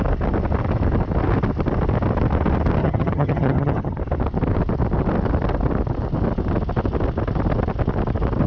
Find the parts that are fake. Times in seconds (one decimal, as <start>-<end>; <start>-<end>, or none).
2.8-4.0